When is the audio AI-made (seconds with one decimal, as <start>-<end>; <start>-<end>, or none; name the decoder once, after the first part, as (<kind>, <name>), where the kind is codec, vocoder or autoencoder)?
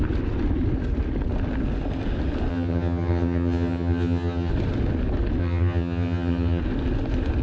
2.5-4.5 (vocoder, HiFi-GAN); 5.4-6.6